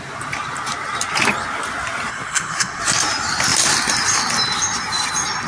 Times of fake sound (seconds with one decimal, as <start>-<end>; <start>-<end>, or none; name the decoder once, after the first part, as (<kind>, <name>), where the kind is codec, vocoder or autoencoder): 2.1-2.8 (codec, HILCodec)